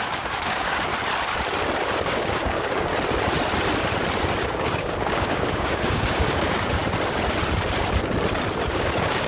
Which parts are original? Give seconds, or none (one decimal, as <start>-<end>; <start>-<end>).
0.9-2.0; 2.9-4.5; 6.8-8.7

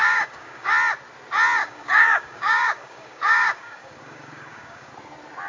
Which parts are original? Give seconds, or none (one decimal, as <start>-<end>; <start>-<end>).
0.7-1.6; 4.9-5.5

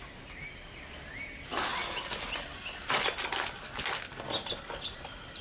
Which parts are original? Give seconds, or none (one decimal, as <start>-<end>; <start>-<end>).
0.0-5.4

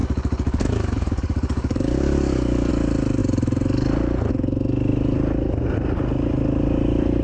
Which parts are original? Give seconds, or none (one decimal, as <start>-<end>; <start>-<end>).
2.7-7.2

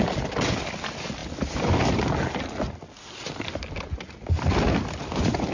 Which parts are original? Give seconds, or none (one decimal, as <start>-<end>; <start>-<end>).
0.0-5.5

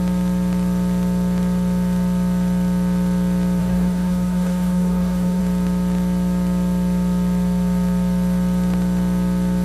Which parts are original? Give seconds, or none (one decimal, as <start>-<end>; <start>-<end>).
0.0-3.6; 5.4-9.6